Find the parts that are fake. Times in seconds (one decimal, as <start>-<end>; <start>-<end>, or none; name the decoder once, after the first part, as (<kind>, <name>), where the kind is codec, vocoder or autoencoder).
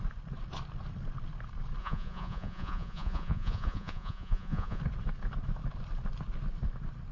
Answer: 1.8-4.8 (vocoder, Vocos)